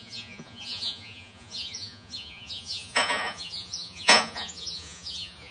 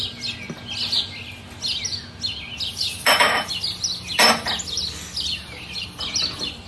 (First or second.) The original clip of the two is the second